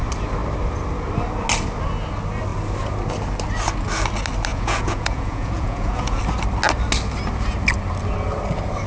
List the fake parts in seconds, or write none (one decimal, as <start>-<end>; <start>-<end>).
4.5-6.2